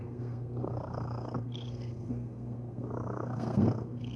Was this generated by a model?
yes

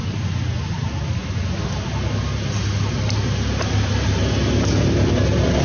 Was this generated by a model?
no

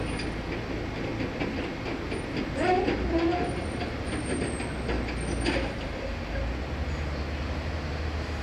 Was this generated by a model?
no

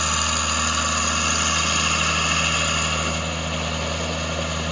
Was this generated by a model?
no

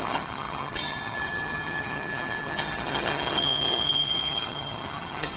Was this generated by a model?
yes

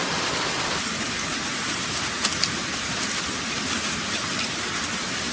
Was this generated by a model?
no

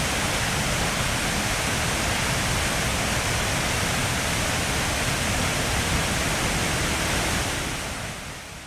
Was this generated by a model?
no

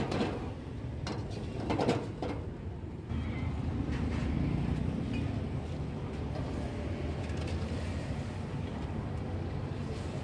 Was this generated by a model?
no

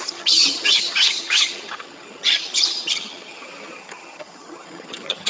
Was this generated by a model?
yes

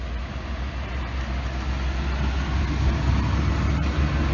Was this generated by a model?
no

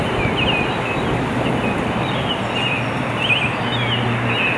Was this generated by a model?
no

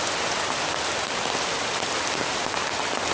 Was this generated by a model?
no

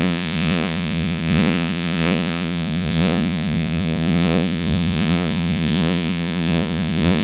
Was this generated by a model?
yes